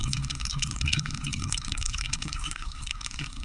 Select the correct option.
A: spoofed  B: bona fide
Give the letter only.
A